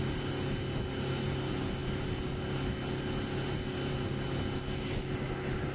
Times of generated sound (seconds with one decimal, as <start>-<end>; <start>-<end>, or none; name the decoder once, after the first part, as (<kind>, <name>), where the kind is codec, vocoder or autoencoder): none